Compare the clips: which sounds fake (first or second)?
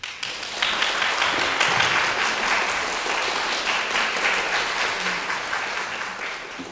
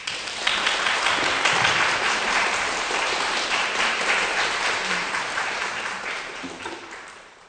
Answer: second